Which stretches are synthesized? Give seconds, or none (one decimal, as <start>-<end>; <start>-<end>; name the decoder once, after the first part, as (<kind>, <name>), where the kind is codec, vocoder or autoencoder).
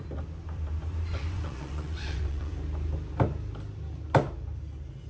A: 1.1-2.5 (vocoder, Vocos)